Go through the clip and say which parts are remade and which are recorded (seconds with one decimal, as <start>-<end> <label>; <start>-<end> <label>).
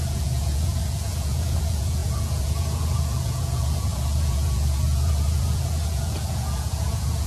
0.0-7.3 remade